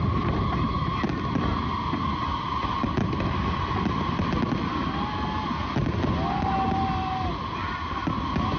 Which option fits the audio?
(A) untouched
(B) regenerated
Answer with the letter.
A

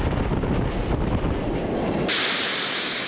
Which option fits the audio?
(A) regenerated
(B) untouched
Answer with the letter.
B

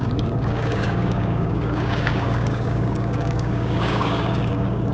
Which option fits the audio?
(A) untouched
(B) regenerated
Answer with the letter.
B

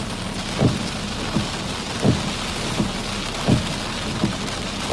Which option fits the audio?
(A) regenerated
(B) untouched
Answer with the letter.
B